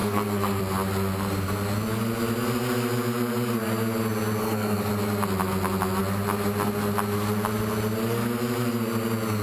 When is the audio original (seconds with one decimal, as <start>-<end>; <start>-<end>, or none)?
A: 0.6-4.4; 4.9-9.4